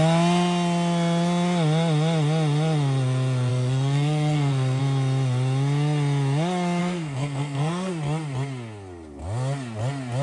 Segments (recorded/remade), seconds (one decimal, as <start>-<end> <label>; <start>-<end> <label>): 0.0-3.5 recorded; 3.5-4.8 remade; 4.8-6.8 recorded; 6.8-7.9 remade; 7.9-10.2 recorded